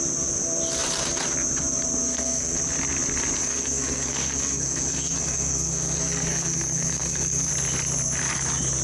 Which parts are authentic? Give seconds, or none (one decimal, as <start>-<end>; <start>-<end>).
0.0-2.1; 2.6-3.4; 7.5-8.8